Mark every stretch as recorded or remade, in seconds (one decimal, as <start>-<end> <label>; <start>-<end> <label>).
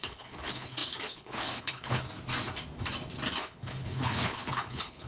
0.0-2.0 remade; 2.0-3.4 recorded; 3.4-5.1 remade